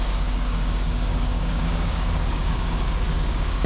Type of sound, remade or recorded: remade